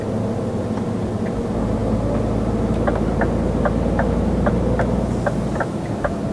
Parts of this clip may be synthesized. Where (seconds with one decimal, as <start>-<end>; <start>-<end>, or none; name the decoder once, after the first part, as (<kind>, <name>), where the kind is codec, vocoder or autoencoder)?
none